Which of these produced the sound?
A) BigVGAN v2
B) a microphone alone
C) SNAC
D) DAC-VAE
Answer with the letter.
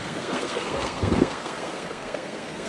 C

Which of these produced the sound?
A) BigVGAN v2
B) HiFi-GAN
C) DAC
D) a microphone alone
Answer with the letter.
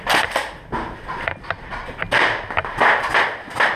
D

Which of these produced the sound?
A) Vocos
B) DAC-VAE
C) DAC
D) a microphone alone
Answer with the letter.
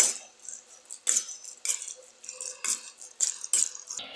D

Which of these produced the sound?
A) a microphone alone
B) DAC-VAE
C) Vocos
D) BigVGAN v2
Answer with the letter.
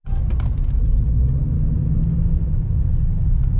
A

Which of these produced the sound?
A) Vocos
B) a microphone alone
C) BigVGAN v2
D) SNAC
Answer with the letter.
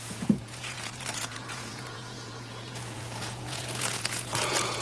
A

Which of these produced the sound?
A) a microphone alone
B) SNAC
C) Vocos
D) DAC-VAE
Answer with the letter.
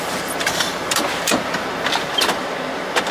A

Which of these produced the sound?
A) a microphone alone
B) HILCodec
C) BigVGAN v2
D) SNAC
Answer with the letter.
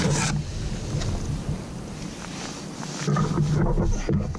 A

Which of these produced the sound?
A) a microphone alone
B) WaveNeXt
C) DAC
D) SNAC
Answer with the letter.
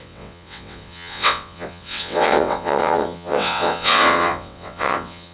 B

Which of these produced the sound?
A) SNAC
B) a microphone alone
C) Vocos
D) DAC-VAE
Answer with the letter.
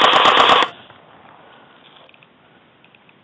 B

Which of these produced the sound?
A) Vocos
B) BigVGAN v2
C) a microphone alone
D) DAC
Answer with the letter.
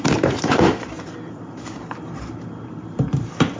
B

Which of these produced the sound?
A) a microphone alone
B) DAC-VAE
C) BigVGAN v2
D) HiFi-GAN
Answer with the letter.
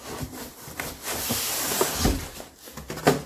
A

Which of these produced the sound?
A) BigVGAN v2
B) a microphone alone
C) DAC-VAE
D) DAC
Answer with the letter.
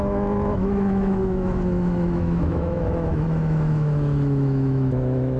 C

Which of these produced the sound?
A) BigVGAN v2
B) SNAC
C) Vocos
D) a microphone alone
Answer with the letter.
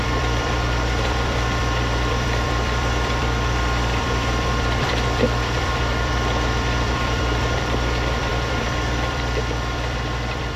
A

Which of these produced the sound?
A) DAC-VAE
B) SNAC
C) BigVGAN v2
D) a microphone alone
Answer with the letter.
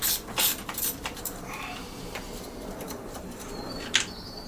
C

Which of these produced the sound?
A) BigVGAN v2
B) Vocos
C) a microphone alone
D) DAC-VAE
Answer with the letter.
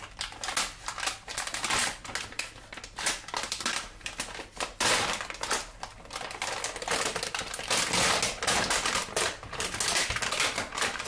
C